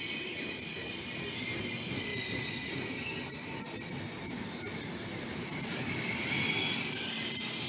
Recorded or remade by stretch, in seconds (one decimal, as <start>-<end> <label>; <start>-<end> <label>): 0.0-7.7 recorded